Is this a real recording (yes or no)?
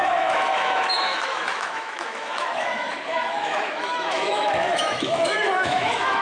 no